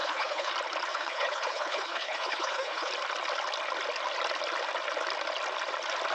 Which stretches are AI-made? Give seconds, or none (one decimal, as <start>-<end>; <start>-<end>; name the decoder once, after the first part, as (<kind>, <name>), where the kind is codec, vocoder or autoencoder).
0.0-0.5 (codec, HILCodec); 0.9-2.9